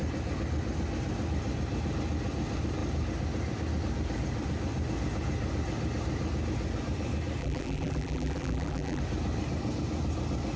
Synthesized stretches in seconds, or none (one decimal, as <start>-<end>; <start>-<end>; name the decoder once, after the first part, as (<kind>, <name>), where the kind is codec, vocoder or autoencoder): 7.4-9.0 (vocoder, BigVGAN v2)